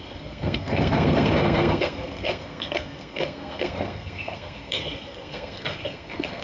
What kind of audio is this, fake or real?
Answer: fake